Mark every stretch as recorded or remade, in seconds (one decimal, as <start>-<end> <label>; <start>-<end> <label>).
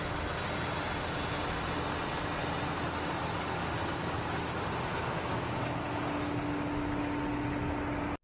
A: 0.0-8.2 recorded